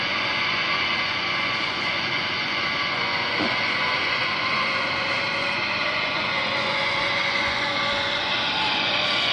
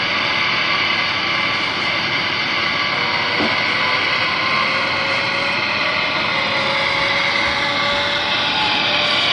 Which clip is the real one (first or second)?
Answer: second